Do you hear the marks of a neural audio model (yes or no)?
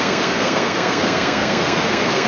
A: yes